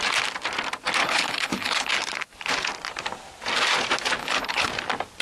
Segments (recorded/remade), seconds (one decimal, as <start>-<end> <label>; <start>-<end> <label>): 0.0-1.0 recorded; 1.0-1.9 remade; 1.9-4.2 recorded; 4.2-4.7 remade; 4.7-5.2 recorded